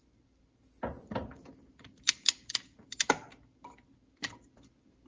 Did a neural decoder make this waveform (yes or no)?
no